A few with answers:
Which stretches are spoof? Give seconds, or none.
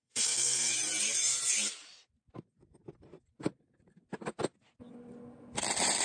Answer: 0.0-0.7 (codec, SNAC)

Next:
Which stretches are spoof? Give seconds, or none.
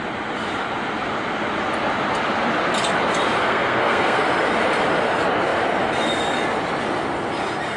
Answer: 3.4-4.3 (codec, SNAC)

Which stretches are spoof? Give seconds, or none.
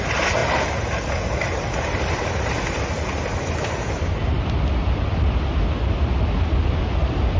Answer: none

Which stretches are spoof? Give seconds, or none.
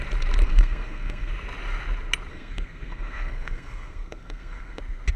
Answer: 0.4-1.3 (codec, SNAC); 2.3-4.8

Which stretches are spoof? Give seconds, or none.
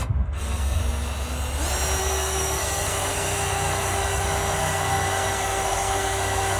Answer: 0.0-0.8 (codec, SNAC); 2.0-6.6